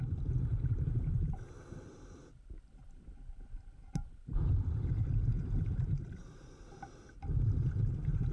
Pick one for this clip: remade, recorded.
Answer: recorded